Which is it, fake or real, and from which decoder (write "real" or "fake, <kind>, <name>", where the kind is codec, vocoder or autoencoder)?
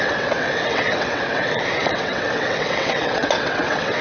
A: fake, vocoder, WaveNeXt